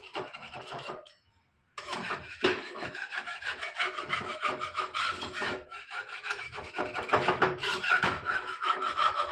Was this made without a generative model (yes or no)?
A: no